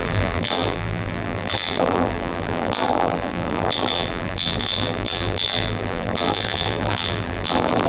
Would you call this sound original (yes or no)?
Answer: no